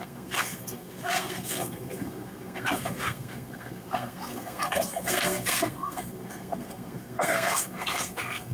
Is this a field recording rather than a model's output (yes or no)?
no